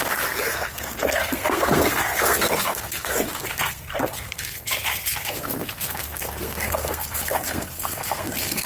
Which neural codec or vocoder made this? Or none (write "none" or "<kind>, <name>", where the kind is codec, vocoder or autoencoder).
codec, SNAC